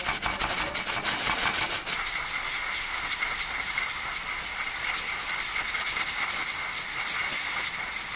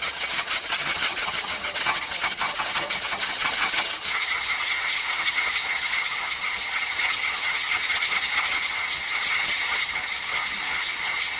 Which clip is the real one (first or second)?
first